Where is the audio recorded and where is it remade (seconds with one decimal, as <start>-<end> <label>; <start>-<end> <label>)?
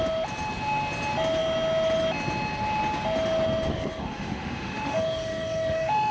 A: 0.0-3.7 recorded; 3.7-6.1 remade